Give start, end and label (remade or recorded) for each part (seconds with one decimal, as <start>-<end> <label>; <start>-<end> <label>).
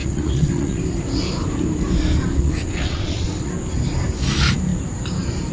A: 0.0-0.8 remade; 0.8-2.4 recorded; 2.4-3.5 remade; 3.5-5.5 recorded